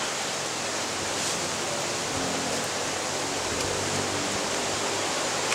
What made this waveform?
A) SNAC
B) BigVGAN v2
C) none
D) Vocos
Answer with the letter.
C